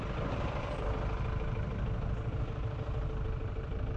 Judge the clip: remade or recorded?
remade